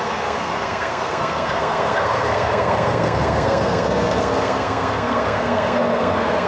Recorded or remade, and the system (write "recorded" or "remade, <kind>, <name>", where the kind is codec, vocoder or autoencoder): remade, codec, SNAC